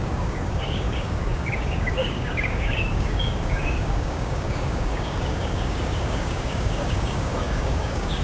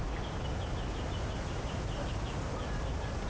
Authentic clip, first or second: second